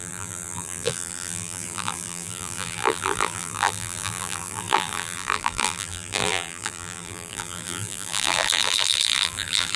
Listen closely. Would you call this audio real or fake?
fake